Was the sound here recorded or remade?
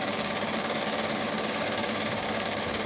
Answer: remade